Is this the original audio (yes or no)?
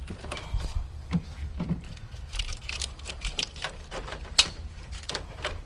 no